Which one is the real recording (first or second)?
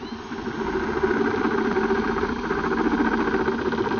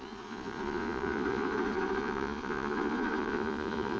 first